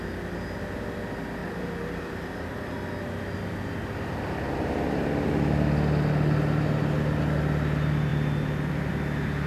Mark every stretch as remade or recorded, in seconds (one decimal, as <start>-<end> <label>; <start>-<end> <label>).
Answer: 0.0-1.4 recorded; 1.4-2.7 remade; 2.7-9.5 recorded